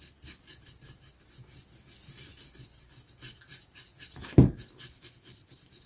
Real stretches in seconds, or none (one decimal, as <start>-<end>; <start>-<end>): 0.0-5.9